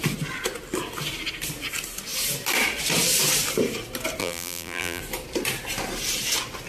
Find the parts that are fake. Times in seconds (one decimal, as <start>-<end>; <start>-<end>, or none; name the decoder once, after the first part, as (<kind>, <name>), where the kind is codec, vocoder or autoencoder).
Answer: 4.2-5.0 (vocoder, BigVGAN v2)